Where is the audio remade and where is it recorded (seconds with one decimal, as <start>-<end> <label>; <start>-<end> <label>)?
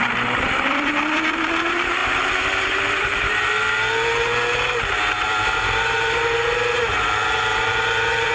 0.0-4.3 remade; 4.3-5.8 recorded; 5.8-8.3 remade